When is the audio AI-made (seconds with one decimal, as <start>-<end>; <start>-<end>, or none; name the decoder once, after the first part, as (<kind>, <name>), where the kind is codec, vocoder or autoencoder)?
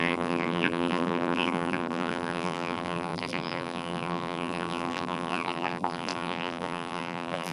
0.0-7.5 (vocoder, BigVGAN v2)